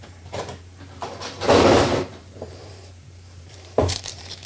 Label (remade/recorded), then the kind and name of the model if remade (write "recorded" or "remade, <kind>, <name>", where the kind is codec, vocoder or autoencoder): remade, vocoder, BigVGAN v2